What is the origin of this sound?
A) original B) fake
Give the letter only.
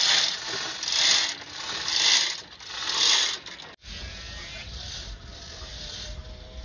A